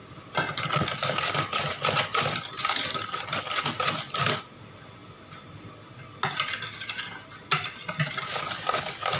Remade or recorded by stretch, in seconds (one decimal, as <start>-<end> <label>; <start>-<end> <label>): 0.0-9.2 recorded